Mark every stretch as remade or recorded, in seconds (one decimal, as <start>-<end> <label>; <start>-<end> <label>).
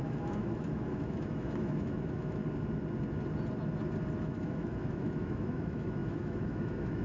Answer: 0.0-2.4 remade; 2.4-4.2 recorded; 4.2-7.0 remade